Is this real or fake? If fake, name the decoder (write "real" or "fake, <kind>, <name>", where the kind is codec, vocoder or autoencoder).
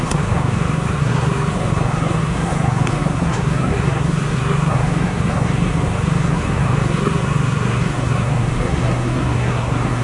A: fake, codec, SNAC